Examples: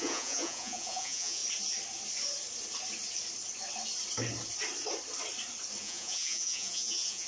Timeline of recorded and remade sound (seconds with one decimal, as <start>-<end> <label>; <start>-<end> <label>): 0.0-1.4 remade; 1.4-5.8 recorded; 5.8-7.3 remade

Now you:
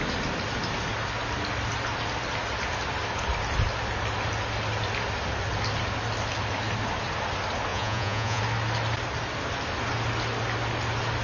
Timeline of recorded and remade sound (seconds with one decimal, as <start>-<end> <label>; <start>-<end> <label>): 0.0-7.7 recorded; 7.7-8.4 remade; 8.4-11.2 recorded

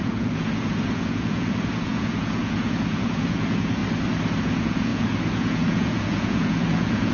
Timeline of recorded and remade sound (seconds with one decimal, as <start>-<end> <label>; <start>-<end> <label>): 0.0-3.8 remade; 3.8-4.4 recorded; 4.4-7.1 remade

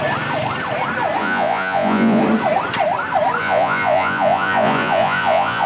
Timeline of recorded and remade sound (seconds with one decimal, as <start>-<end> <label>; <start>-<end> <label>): 0.0-1.2 recorded; 1.2-2.2 remade; 2.2-3.4 recorded; 3.4-5.7 remade

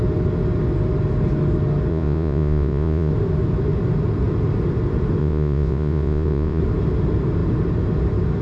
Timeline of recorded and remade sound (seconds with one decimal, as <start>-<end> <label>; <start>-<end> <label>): 0.0-1.9 recorded; 1.9-3.1 remade; 3.1-5.2 recorded; 5.2-6.6 remade; 6.6-8.4 recorded